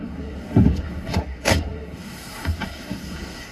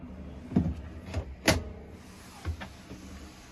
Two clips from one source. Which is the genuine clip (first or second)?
second